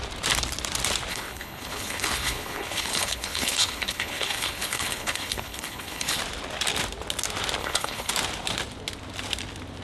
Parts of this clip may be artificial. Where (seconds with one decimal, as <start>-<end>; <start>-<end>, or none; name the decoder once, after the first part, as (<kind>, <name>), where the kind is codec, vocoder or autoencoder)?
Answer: 1.1-6.2 (codec, HILCodec); 7.6-8.1